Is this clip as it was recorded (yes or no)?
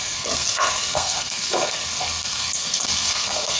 no